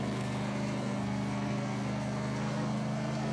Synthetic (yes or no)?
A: yes